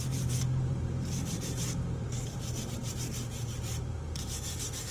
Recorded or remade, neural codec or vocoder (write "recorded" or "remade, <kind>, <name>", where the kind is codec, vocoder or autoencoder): remade, vocoder, BigVGAN v2